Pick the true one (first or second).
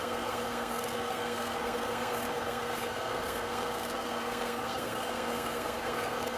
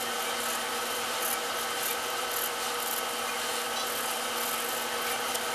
second